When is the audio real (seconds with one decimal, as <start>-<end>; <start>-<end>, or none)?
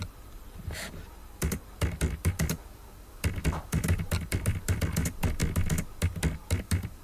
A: 5.4-6.6